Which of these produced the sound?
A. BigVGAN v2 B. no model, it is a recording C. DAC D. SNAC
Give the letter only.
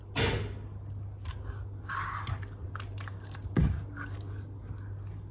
B